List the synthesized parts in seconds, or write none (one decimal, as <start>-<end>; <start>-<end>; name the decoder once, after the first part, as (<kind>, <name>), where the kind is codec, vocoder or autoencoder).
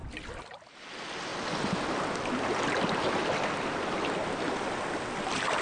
none